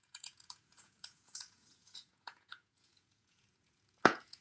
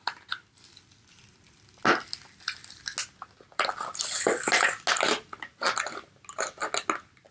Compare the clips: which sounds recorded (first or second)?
second